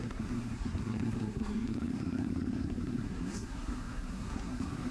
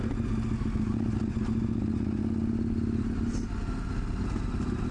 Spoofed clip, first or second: first